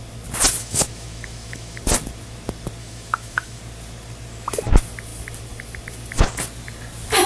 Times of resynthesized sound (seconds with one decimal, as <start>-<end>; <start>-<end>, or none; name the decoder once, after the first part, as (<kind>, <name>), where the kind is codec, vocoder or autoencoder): 0.6-1.8 (autoencoder, DAC-VAE); 2.8-3.6

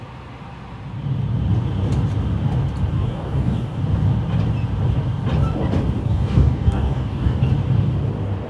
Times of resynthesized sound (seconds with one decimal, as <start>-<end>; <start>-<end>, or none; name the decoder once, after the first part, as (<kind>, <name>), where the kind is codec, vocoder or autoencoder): 2.9-3.8 (codec, DAC); 6.0-7.5

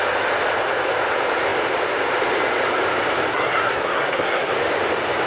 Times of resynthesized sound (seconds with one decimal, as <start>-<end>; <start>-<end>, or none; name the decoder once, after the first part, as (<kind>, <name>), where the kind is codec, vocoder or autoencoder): 3.3-4.5 (codec, SNAC)

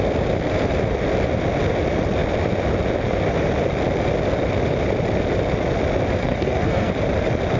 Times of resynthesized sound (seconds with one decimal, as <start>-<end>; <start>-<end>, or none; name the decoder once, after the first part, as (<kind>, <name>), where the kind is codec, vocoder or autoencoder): 6.2-6.9 (codec, SNAC)

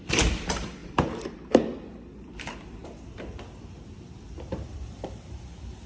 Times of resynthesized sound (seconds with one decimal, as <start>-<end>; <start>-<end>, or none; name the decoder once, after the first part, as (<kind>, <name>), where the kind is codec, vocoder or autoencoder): 0.0-0.8 (vocoder, BigVGAN v2); 2.4-2.8; 4.7-5.9

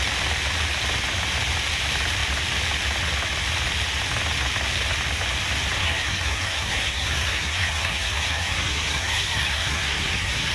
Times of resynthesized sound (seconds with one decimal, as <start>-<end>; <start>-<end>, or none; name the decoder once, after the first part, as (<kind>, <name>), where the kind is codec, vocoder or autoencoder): 5.8-10.5 (codec, SNAC)

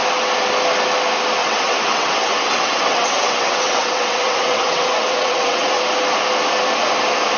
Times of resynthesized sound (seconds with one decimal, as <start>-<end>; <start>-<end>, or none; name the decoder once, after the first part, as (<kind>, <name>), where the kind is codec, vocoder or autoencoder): 1.4-5.8 (vocoder, WaveNeXt)